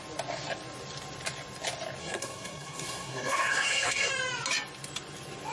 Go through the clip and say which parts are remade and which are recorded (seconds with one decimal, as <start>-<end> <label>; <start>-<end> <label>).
0.0-2.0 recorded; 2.0-4.1 remade; 4.1-5.5 recorded